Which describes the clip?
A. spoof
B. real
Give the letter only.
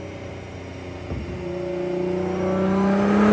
B